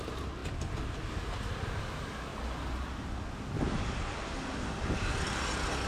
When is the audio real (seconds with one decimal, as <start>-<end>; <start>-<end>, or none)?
0.0-5.9